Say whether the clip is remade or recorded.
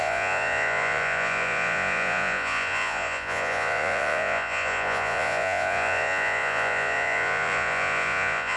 remade